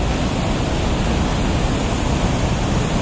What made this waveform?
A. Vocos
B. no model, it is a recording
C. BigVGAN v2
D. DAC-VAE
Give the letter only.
B